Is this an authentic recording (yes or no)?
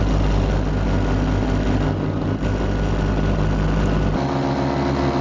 yes